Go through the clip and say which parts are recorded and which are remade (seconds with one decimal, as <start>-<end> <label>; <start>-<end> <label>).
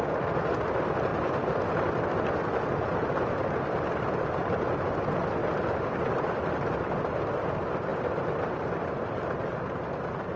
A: 0.0-5.4 recorded; 5.4-6.5 remade; 6.5-7.9 recorded; 7.9-9.6 remade; 9.6-10.4 recorded